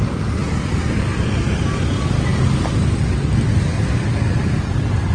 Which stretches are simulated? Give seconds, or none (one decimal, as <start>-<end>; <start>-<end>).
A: none